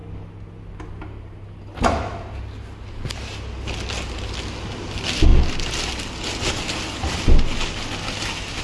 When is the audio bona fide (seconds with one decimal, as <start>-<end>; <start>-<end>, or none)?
0.0-8.6